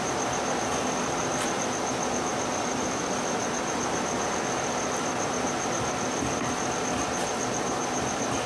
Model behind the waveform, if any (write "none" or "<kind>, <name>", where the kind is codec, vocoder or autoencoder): none